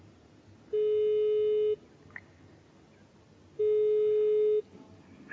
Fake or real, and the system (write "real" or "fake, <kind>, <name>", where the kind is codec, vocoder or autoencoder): real